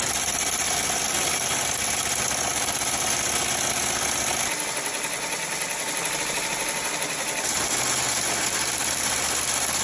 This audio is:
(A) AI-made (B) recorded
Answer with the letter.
B